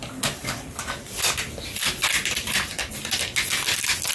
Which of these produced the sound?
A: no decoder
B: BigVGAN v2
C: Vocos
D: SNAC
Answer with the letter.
A